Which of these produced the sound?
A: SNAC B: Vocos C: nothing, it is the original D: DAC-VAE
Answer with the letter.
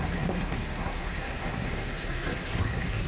A